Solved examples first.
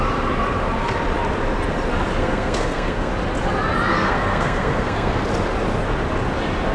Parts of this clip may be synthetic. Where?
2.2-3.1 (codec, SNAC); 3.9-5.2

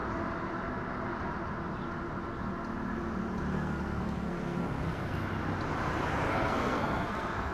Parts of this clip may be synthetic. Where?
3.5-5.2 (codec, SNAC); 6.3-7.5

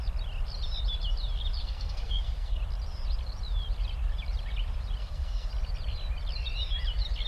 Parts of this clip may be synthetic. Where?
1.6-2.6 (codec, SNAC); 5.0-5.5

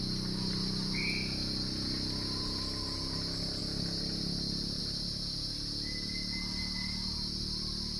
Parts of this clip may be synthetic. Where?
none